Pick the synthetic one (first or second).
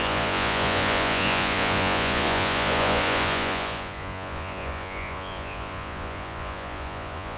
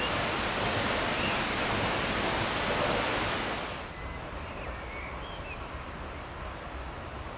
first